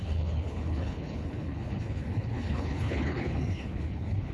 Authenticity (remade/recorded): remade